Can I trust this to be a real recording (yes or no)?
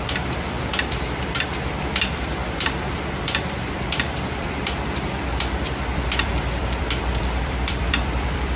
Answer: no